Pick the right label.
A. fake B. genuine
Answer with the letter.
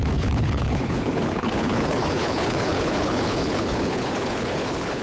A